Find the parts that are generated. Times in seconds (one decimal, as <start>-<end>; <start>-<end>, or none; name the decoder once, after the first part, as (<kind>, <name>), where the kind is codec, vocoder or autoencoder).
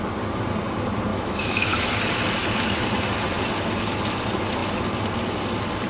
1.1-2.0 (autoencoder, DAC-VAE)